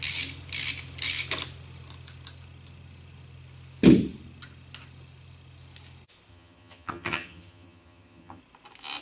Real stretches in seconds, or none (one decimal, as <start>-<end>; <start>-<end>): 0.0-6.3; 8.4-9.0